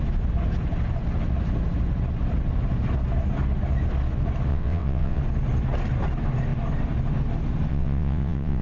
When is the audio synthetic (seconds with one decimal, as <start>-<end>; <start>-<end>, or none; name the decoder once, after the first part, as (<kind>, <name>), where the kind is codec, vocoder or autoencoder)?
4.5-5.2 (vocoder, WaveNeXt); 7.7-8.6